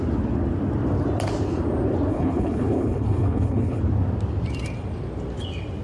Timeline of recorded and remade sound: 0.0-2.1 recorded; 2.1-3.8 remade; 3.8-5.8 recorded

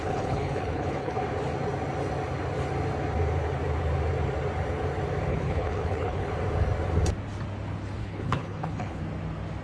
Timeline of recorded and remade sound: 0.0-1.2 remade; 1.2-5.3 recorded; 5.3-6.3 remade; 6.3-8.0 recorded; 8.0-9.0 remade; 9.0-9.6 recorded